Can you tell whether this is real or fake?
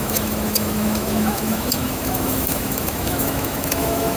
fake